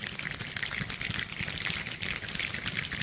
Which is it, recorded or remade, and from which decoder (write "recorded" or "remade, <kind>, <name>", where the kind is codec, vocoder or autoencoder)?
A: recorded